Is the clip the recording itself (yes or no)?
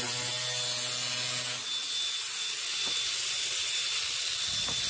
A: yes